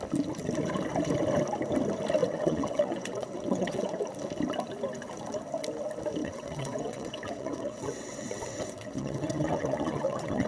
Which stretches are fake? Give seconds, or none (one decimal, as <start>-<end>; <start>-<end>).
2.2-4.0; 6.2-10.5